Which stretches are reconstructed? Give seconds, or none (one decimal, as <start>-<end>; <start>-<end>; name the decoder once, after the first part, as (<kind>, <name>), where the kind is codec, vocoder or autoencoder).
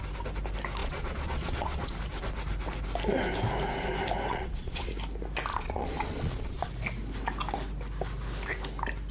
0.8-2.0 (vocoder, Vocos); 4.3-4.9; 5.5-6.7